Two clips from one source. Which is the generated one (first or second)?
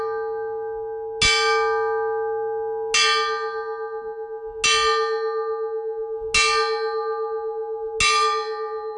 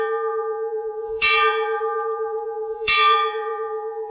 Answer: second